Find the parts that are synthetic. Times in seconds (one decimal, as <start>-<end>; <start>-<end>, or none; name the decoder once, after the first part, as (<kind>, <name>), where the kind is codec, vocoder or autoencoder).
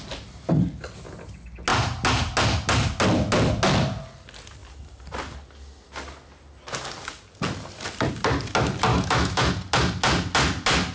8.9-9.5 (autoencoder, DAC-VAE)